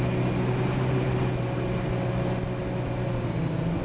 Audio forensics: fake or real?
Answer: real